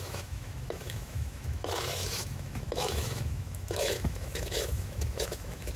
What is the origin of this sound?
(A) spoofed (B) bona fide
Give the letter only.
A